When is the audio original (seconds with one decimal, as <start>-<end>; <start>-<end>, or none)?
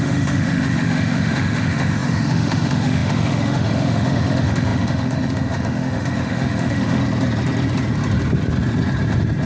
7.0-9.5